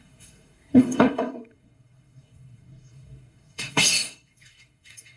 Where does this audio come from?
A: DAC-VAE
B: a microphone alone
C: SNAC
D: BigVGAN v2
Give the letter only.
C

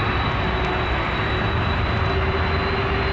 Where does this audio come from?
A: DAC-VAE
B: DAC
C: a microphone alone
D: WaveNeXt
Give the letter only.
C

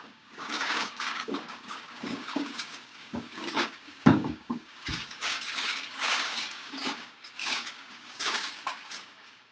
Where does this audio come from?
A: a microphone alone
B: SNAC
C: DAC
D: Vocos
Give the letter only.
C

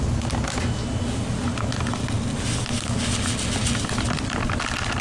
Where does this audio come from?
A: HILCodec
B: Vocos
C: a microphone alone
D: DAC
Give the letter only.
C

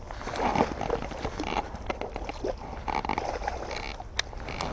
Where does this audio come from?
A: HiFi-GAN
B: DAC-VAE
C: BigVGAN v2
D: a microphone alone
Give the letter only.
D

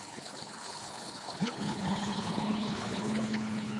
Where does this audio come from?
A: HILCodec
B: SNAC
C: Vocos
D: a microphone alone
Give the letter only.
A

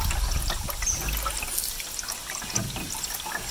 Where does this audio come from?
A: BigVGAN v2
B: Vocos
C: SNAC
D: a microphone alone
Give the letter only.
D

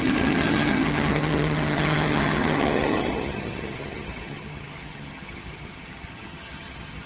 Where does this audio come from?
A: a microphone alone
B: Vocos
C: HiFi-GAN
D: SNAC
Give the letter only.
C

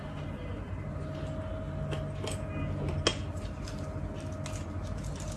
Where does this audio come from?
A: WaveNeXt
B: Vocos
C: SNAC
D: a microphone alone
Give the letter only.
D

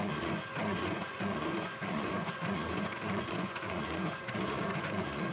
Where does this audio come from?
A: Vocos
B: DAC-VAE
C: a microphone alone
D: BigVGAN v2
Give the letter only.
A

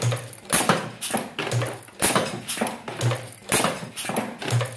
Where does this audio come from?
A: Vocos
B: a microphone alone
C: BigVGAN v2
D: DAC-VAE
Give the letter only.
B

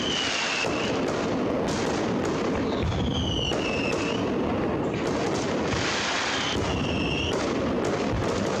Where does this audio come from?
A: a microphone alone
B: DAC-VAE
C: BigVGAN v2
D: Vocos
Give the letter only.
A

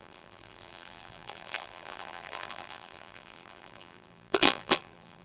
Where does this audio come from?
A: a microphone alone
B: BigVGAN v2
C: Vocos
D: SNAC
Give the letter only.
B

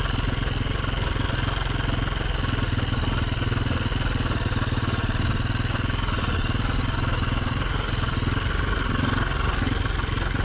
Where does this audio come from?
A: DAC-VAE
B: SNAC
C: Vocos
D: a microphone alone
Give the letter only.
D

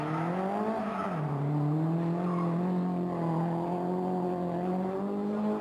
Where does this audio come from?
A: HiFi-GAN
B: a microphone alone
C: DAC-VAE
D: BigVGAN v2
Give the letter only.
B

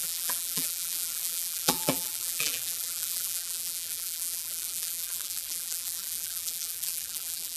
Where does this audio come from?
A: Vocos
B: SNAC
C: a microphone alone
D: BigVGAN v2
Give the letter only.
D